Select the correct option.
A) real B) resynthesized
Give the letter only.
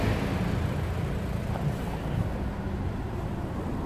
A